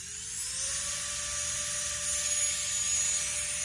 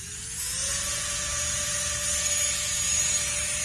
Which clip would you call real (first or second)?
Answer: first